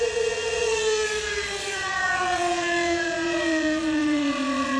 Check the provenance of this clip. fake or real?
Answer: fake